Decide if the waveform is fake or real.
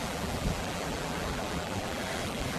fake